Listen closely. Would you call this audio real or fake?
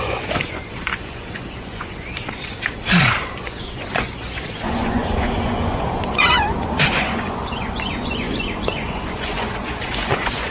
fake